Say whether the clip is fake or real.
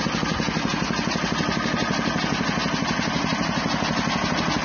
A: real